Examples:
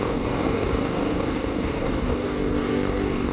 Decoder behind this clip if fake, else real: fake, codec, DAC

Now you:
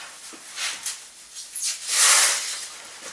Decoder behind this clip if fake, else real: real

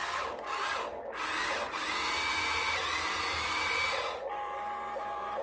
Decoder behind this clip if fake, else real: real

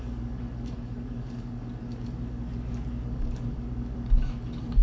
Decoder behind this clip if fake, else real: fake, codec, DAC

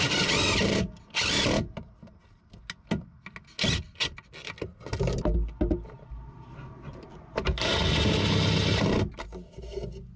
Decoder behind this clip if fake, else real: real